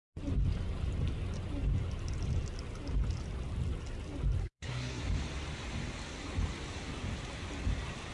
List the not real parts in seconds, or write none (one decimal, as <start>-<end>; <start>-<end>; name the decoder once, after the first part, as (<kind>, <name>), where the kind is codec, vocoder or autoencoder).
4.4-5.0 (codec, SNAC)